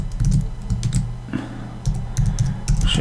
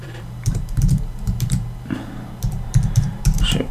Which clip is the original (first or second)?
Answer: first